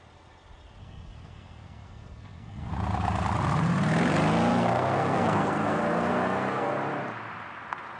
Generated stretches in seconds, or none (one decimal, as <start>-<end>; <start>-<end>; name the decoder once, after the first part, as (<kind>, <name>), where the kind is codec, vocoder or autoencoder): 0.8-2.7 (codec, SNAC); 4.5-6.7